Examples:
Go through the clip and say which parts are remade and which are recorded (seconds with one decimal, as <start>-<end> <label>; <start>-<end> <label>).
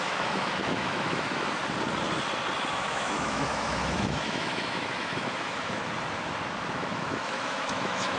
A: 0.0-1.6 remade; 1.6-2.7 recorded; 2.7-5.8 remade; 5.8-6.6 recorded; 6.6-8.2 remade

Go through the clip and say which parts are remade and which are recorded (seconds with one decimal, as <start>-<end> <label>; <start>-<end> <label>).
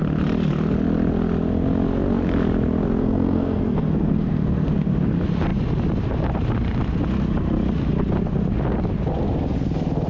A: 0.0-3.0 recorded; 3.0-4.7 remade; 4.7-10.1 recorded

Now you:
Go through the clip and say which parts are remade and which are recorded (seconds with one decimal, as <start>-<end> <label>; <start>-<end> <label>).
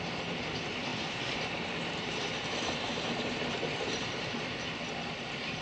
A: 0.0-0.9 recorded; 0.9-4.3 remade; 4.3-5.6 recorded